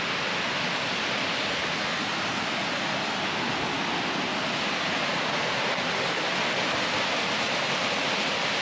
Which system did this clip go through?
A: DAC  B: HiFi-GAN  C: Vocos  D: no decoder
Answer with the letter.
D